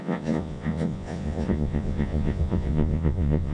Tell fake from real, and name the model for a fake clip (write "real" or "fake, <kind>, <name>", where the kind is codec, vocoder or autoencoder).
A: fake, vocoder, Vocos